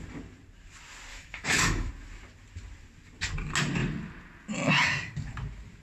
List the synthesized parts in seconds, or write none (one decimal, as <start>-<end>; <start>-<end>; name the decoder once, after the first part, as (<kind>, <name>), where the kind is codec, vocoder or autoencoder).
1.1-1.9 (autoencoder, DAC-VAE)